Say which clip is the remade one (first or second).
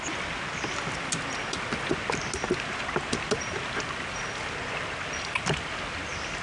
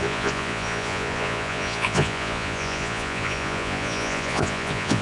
second